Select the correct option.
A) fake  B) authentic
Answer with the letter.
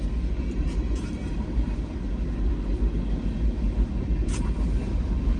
B